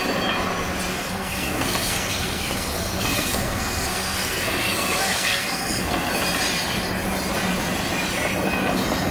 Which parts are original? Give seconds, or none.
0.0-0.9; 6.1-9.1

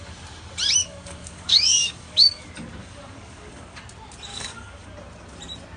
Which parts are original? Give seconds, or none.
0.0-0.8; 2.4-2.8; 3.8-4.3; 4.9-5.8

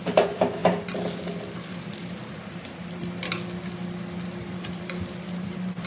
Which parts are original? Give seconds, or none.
0.6-1.7; 3.0-4.4

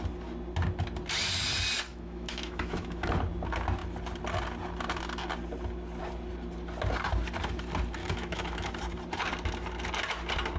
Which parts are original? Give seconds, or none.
0.0-1.9; 3.1-8.0; 8.7-10.6